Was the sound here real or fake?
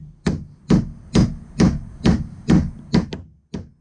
real